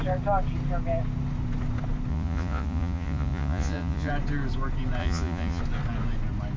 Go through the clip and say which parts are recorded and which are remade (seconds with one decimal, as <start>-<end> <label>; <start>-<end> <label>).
0.0-2.1 recorded; 2.1-4.1 remade; 4.1-5.0 recorded; 5.0-5.6 remade; 5.6-6.6 recorded